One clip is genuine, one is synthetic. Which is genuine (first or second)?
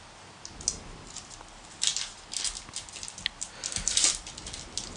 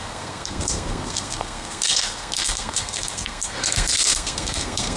first